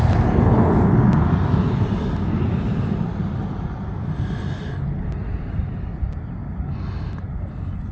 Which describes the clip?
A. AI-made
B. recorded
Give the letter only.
B